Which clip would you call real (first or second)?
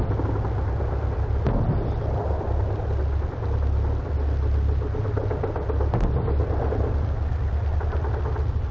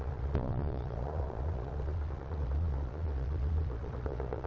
first